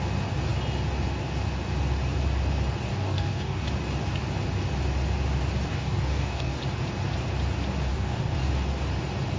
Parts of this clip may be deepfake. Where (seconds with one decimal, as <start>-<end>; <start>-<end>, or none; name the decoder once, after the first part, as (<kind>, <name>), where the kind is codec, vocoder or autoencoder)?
2.9-3.7 (codec, DAC); 5.7-6.6; 7.9-8.5